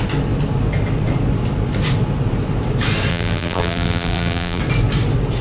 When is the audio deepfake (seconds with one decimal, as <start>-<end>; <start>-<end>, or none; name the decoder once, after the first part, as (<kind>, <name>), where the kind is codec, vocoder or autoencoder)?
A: 3.1-4.6 (vocoder, BigVGAN v2)